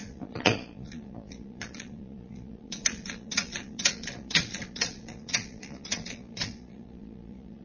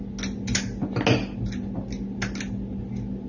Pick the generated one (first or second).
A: first